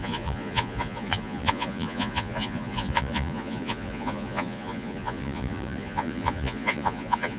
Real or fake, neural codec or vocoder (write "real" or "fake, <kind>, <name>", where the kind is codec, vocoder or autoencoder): fake, vocoder, Vocos